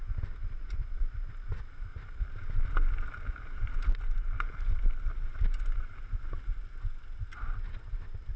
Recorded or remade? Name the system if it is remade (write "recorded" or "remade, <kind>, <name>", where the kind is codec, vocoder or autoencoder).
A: recorded